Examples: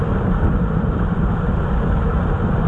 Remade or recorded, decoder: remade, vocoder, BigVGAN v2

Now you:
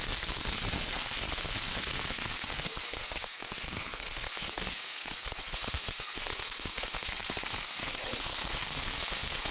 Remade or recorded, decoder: remade, codec, SNAC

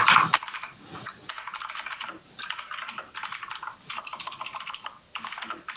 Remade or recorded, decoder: recorded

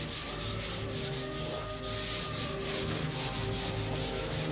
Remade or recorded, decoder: recorded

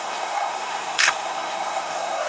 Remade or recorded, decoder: remade, codec, SNAC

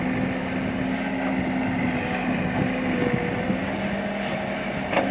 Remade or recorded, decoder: recorded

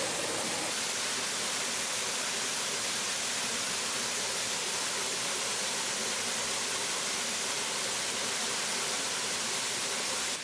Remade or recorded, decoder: recorded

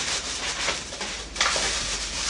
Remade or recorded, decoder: remade, vocoder, BigVGAN v2